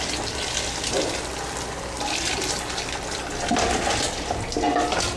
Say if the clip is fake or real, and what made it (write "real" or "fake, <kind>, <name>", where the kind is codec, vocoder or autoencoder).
real